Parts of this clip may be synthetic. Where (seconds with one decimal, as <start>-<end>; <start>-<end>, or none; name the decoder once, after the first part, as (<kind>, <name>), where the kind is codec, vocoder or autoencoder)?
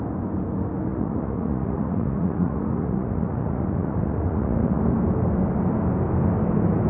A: 0.9-4.8 (vocoder, Vocos)